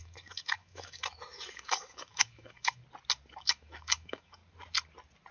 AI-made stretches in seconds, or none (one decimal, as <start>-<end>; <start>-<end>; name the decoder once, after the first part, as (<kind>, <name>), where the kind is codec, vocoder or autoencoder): 0.0-2.8 (autoencoder, DAC-VAE); 3.3-4.4